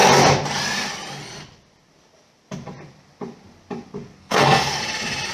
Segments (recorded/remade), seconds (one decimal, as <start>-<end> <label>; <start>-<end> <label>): 0.0-4.2 recorded; 4.2-4.8 remade; 4.8-5.3 recorded